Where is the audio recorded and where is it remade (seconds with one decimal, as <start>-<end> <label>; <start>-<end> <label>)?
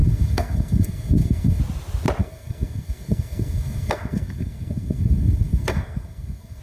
0.0-1.6 remade; 1.6-2.2 recorded; 2.2-6.6 remade